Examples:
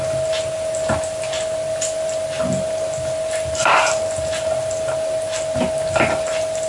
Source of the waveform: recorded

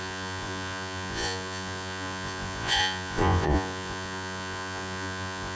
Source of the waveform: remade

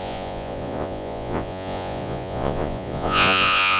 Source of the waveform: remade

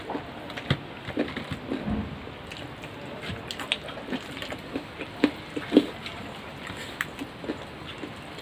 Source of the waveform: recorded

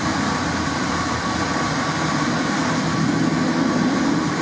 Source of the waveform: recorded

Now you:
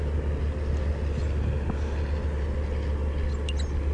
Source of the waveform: recorded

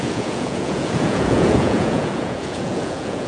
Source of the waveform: remade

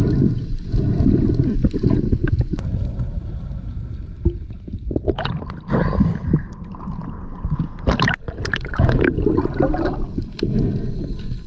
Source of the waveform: recorded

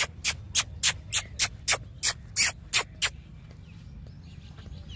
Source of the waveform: recorded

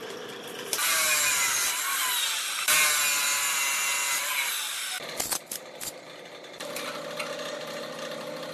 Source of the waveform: recorded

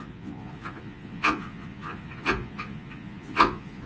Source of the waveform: remade